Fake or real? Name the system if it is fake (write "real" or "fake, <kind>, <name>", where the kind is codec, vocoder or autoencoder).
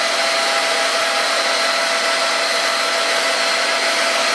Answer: real